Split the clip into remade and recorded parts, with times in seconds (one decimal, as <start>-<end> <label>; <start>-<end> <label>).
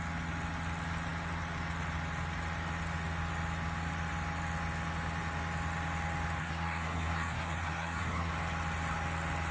0.0-6.4 recorded; 6.4-8.3 remade; 8.3-9.5 recorded